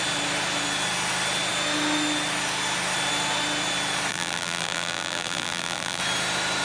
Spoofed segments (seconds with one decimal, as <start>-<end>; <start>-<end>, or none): 4.1-6.0